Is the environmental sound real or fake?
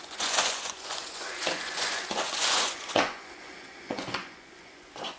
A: fake